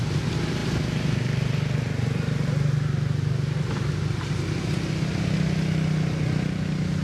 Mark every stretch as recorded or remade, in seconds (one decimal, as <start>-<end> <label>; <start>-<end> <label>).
0.0-7.0 recorded